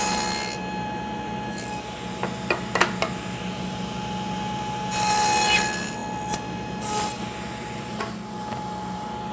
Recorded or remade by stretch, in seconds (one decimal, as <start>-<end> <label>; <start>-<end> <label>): 0.0-9.3 recorded